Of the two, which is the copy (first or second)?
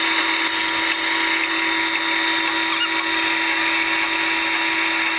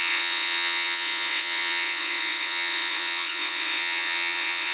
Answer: second